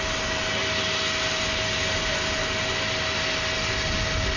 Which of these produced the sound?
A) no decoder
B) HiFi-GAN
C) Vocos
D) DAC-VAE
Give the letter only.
A